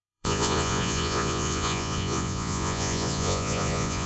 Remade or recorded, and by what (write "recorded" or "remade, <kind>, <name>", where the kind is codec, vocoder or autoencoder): remade, vocoder, Vocos